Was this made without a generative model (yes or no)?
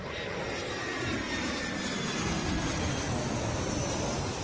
yes